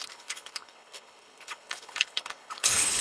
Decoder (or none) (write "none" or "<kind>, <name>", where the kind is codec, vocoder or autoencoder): codec, HILCodec